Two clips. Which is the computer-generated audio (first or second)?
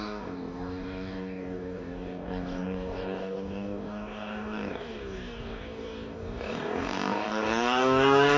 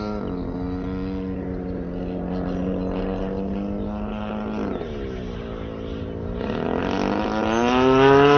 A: first